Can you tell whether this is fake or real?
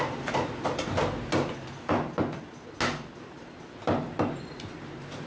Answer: real